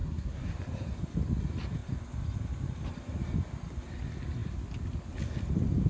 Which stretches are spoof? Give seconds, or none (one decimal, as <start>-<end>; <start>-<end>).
0.0-0.6